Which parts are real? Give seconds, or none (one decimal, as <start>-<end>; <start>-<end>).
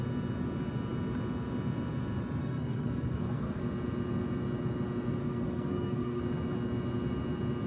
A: 0.0-2.4; 3.6-5.2; 6.2-7.7